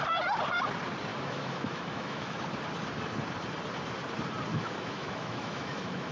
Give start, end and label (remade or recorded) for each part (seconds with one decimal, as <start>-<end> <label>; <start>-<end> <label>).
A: 0.0-1.1 recorded; 1.1-2.4 remade; 2.4-4.5 recorded; 4.5-6.1 remade